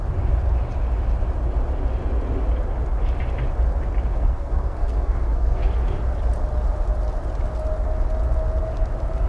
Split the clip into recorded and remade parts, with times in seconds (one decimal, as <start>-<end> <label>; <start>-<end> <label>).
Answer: 0.0-4.1 recorded; 4.1-5.7 remade; 5.7-9.3 recorded

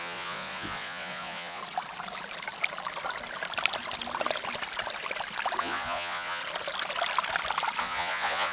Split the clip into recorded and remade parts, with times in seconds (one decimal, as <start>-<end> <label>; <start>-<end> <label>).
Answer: 0.0-1.6 remade; 1.6-5.6 recorded; 5.6-6.4 remade; 6.4-7.8 recorded; 7.8-8.5 remade

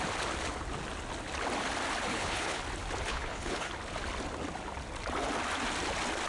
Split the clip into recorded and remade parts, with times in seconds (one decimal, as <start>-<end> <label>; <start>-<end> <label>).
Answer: 0.0-2.1 recorded; 2.1-2.6 remade; 2.6-3.1 recorded; 3.1-3.7 remade; 3.7-6.3 recorded

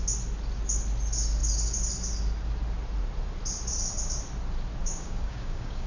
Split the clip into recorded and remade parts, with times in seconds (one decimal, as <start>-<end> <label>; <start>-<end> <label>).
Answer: 0.0-4.8 recorded; 4.8-5.9 remade

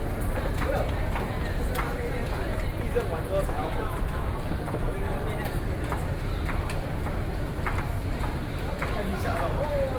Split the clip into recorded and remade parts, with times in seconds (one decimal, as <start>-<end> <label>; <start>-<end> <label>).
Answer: 0.0-3.6 recorded; 3.6-4.3 remade; 4.3-10.0 recorded

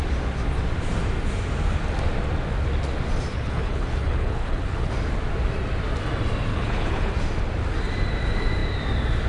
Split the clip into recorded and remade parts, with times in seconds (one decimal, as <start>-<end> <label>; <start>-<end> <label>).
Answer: 0.0-3.3 recorded; 3.3-4.9 remade; 4.9-6.5 recorded; 6.5-7.1 remade; 7.1-9.3 recorded